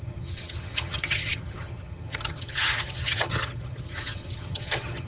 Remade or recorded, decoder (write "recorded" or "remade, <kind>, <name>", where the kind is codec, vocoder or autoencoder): remade, vocoder, HiFi-GAN